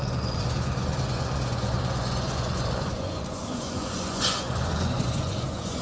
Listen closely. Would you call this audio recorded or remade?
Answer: remade